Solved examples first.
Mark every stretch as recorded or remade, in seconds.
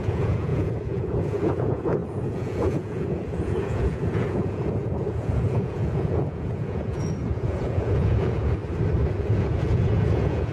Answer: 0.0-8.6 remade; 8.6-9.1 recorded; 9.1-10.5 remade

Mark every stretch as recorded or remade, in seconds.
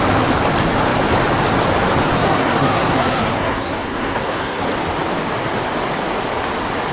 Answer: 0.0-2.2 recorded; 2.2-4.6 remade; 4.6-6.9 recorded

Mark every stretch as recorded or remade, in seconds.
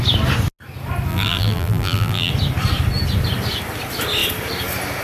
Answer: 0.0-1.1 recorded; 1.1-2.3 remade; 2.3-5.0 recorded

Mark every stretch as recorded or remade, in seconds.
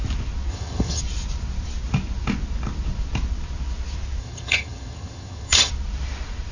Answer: 0.0-0.5 recorded; 0.5-1.0 remade; 1.0-4.2 recorded; 4.2-5.7 remade; 5.7-6.5 recorded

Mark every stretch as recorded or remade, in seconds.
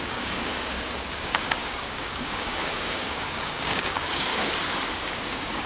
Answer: 0.0-4.3 remade; 4.3-5.0 recorded; 5.0-5.7 remade